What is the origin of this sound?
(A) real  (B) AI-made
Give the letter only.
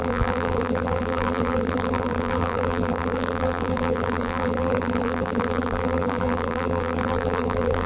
B